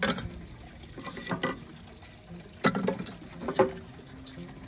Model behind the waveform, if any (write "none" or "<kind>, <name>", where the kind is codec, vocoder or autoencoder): none